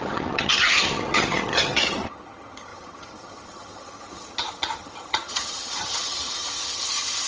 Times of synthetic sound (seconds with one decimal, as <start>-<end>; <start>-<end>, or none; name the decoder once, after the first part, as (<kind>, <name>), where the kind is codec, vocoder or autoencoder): 0.0-7.3 (vocoder, HiFi-GAN)